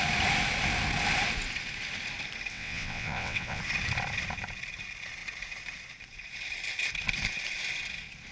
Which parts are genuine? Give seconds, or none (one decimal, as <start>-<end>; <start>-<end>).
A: 0.0-2.5; 3.6-8.3